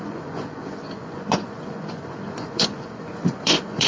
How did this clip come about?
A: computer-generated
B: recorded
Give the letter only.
A